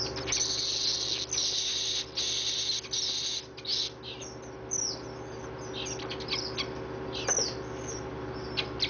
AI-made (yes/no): no